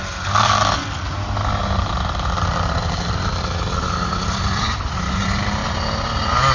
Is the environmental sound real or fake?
real